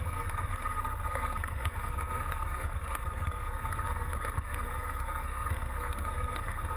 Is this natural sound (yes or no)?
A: no